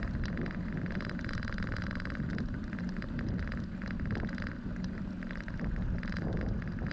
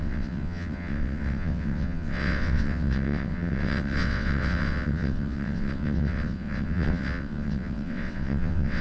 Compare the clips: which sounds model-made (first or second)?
second